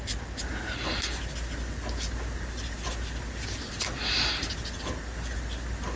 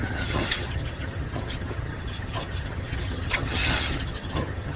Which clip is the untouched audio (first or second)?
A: first